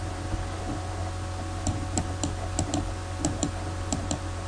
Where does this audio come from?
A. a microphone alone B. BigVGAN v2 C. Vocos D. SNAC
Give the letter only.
A